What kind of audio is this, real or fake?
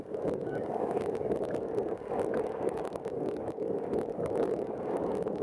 fake